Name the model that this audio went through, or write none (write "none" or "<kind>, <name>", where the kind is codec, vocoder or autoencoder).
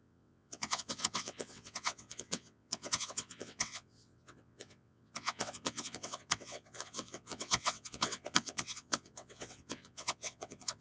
vocoder, WaveNeXt